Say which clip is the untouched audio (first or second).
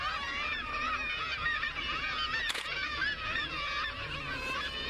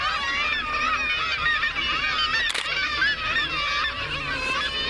second